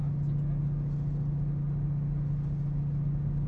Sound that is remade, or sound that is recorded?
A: recorded